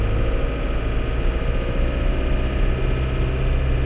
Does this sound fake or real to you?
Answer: real